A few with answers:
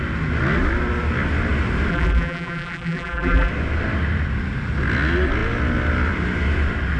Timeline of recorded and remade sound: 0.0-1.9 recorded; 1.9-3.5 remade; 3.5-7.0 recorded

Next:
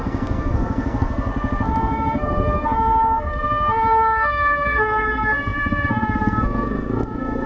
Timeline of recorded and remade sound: 0.0-1.3 remade; 1.3-1.8 recorded; 1.8-7.5 remade

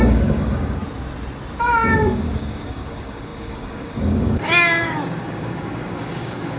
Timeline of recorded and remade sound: 0.0-0.8 remade; 0.8-1.6 recorded; 1.6-6.6 remade

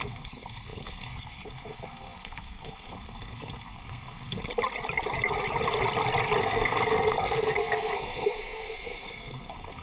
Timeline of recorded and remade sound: 0.0-4.5 remade; 4.5-6.4 recorded; 6.4-9.8 remade

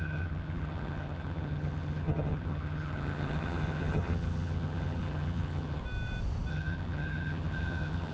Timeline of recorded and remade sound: 0.0-5.8 remade; 5.8-6.5 recorded; 6.5-8.1 remade

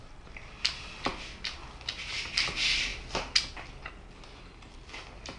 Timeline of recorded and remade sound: 0.0-5.4 recorded